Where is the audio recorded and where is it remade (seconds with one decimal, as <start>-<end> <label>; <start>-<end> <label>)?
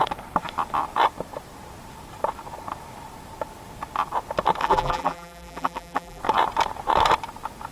0.0-4.6 recorded; 4.6-6.2 remade; 6.2-7.7 recorded